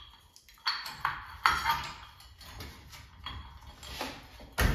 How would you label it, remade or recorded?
recorded